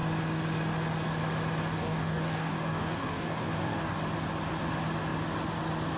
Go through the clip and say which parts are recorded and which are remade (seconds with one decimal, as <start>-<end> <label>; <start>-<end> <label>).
0.0-1.7 recorded; 1.7-4.0 remade; 4.0-6.0 recorded